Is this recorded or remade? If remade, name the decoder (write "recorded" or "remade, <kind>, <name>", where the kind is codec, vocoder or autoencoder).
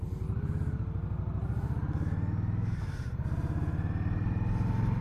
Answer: recorded